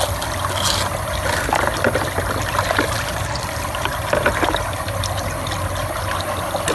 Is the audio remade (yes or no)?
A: no